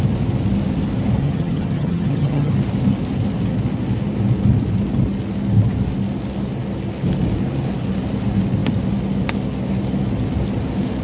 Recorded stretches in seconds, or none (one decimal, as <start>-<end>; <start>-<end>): 0.0-1.2; 2.5-11.0